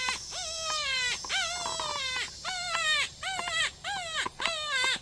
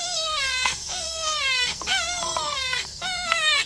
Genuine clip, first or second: first